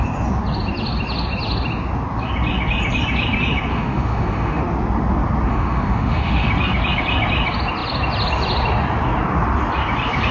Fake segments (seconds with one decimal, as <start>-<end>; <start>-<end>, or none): 3.7-4.6; 5.5-6.5